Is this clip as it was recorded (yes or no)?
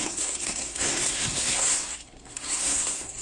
no